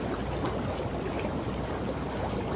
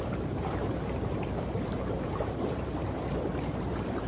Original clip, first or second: first